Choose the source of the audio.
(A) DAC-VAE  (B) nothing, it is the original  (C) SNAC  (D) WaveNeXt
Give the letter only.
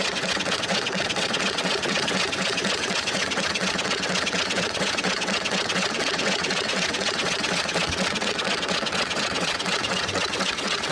D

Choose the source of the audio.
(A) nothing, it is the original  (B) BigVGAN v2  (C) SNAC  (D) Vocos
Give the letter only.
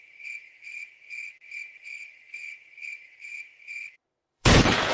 D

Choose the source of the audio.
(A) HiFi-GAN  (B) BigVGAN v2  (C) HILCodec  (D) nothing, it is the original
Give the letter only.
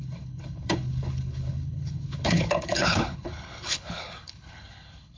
C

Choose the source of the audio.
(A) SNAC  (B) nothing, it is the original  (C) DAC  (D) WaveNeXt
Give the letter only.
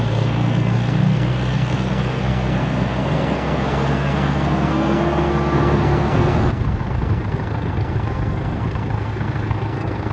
A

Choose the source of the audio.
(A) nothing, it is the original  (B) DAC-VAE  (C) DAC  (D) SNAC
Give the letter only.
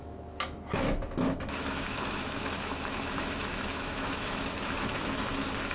B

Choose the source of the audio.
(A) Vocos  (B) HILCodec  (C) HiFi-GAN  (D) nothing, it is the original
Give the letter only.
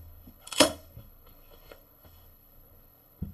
B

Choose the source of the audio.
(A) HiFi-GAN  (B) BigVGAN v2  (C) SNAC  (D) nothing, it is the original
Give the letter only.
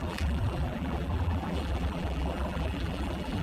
B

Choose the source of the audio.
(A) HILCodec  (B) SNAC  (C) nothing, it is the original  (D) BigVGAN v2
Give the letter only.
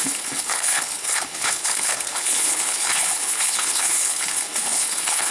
A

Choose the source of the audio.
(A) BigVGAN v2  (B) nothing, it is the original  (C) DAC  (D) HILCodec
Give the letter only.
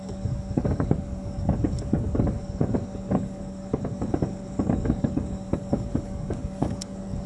C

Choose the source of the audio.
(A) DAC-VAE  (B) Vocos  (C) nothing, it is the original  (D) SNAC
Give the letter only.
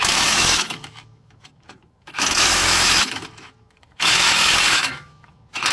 A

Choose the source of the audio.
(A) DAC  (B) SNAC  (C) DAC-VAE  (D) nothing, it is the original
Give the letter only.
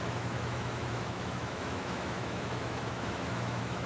C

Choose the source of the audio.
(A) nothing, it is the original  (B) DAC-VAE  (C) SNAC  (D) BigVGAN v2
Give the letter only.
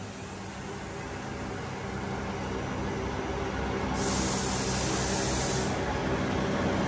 A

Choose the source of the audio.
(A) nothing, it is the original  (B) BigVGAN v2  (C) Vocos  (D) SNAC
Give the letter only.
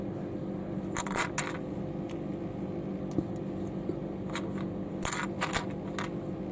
A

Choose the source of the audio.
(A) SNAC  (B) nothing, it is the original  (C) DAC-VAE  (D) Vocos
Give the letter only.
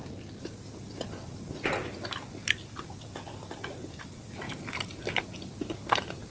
B